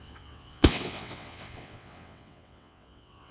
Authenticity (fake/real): fake